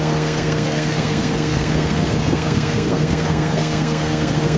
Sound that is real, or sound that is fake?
fake